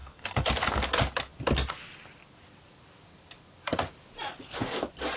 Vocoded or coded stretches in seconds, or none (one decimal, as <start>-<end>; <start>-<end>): 0.0-0.5